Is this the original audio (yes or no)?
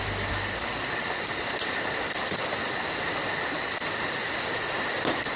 yes